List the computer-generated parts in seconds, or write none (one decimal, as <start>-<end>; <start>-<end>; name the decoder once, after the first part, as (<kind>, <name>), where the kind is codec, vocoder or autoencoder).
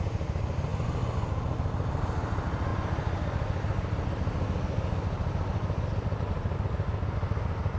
none